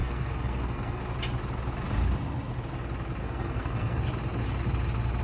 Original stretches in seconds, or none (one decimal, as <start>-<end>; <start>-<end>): 1.0-3.2; 4.0-5.2